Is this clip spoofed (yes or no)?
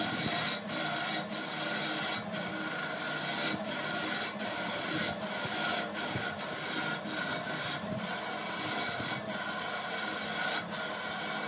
no